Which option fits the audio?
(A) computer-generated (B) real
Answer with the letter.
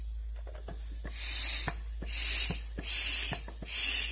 B